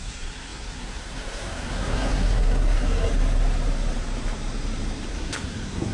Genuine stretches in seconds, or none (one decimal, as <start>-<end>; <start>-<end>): 3.1-5.1